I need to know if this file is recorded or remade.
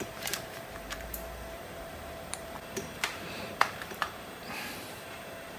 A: remade